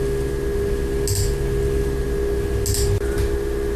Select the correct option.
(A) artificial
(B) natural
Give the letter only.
B